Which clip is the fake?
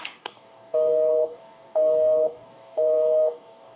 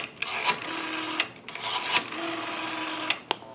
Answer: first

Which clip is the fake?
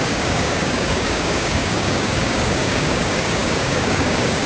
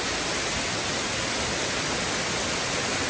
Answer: first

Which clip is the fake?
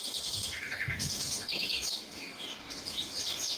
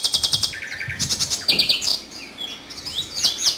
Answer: first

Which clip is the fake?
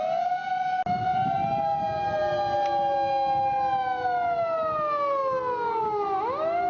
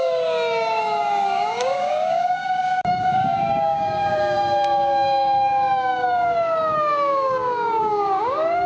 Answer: second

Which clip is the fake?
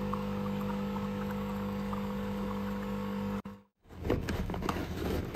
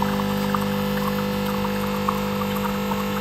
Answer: first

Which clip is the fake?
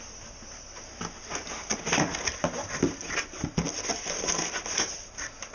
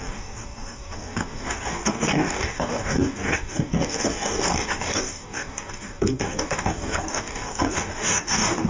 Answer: second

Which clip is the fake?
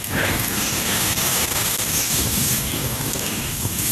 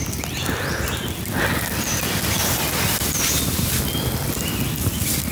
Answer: first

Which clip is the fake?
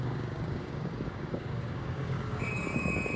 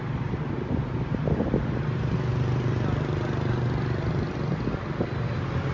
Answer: first